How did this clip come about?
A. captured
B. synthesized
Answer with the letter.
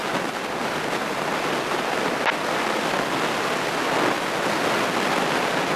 A